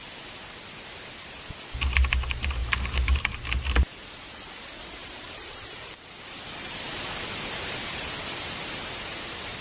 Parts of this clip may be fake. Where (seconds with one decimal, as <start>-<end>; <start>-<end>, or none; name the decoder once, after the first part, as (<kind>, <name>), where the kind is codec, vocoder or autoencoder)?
2.6-3.4 (vocoder, BigVGAN v2); 5.0-7.1; 7.8-9.2